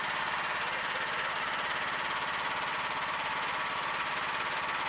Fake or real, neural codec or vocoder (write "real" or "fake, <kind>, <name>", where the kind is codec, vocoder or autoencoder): real